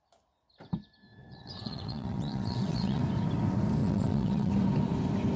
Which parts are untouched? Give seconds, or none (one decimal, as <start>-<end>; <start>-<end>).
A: 0.0-1.2; 3.0-3.8; 4.5-5.4